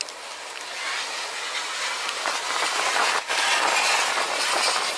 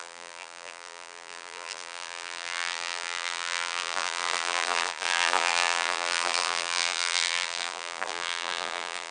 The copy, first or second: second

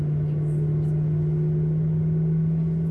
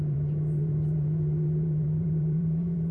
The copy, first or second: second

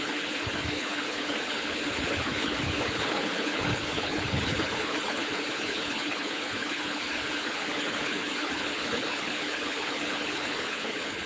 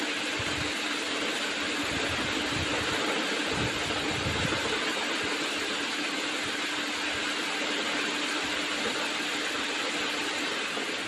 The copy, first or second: first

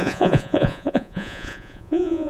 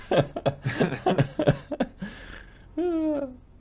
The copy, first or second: first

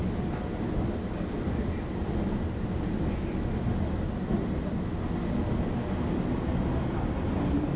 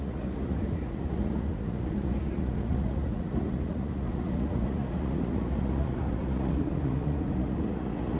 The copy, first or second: second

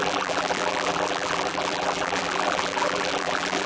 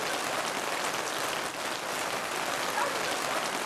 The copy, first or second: first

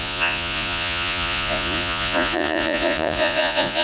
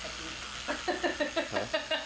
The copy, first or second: first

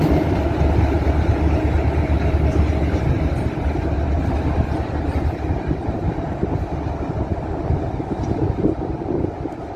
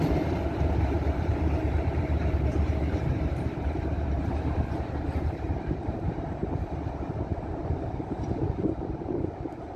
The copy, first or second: second